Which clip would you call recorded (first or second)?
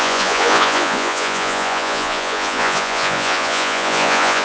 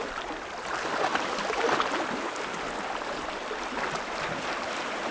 second